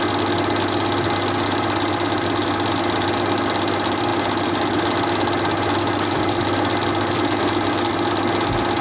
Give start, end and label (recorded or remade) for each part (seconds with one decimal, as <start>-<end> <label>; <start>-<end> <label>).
0.0-8.8 recorded